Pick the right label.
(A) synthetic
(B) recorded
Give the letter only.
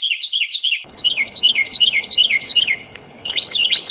A